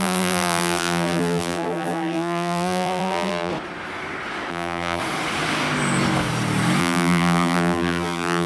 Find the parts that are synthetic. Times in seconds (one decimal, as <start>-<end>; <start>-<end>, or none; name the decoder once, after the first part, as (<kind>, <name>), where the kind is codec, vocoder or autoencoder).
0.0-3.5 (vocoder, BigVGAN v2); 4.5-5.0; 6.8-8.5